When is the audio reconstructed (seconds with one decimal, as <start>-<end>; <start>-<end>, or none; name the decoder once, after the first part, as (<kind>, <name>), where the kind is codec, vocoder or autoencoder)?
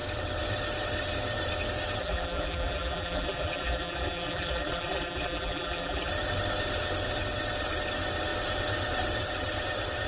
2.0-6.1 (vocoder, BigVGAN v2)